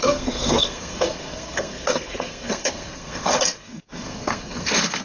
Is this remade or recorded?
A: remade